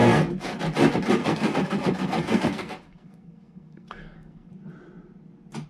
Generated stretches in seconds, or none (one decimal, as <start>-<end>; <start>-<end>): 0.0-0.6; 1.2-4.5